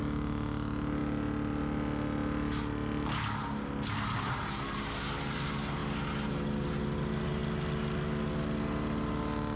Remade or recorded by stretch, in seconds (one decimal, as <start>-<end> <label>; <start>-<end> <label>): 0.0-9.6 recorded